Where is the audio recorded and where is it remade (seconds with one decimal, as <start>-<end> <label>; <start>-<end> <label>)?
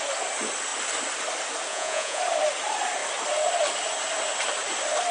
0.0-1.7 recorded; 1.7-2.2 remade; 2.2-5.1 recorded